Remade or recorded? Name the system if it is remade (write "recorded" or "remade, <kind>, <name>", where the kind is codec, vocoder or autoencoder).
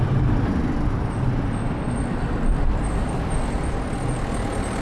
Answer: recorded